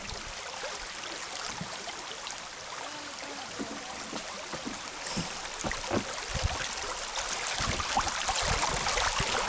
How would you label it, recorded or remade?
recorded